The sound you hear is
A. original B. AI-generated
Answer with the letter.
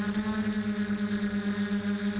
A